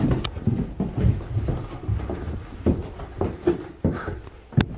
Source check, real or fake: real